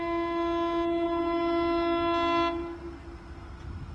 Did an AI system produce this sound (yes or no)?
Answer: no